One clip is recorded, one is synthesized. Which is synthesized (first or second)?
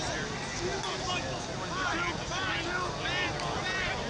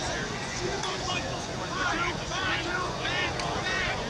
second